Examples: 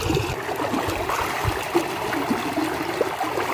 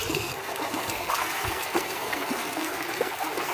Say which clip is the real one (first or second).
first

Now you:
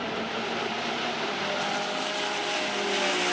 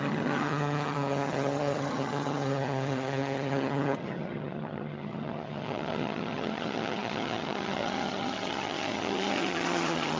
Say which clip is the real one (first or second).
first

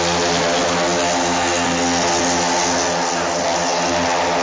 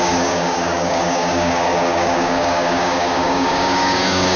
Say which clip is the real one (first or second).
first